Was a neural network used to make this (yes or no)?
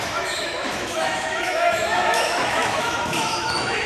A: yes